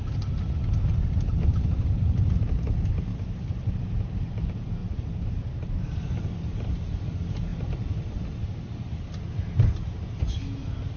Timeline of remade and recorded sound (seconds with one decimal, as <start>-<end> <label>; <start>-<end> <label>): 0.0-11.0 recorded